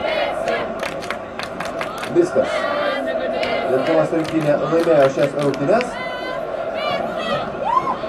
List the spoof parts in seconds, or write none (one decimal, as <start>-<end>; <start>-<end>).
0.0-3.8; 7.2-8.1

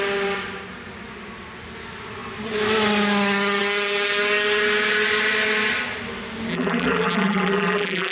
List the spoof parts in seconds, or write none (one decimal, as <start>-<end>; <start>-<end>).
6.5-8.1

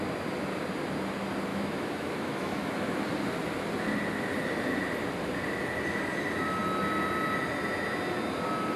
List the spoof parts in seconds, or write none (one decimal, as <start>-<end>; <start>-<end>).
1.5-3.0

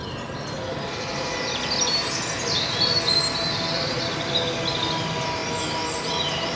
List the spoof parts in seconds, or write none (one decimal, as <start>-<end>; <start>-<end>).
none

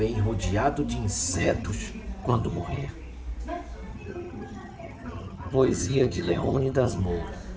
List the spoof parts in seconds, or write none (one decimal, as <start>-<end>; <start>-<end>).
1.2-1.7; 2.2-2.9; 3.9-7.0

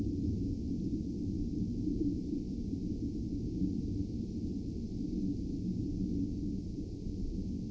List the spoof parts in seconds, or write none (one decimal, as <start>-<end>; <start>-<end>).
none